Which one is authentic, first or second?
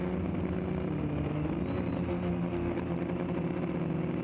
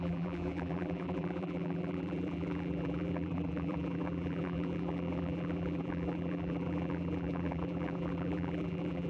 first